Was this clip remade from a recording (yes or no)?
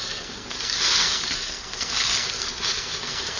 yes